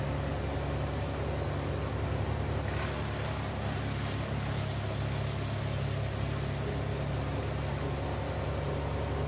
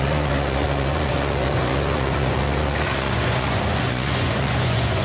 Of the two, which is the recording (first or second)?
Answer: first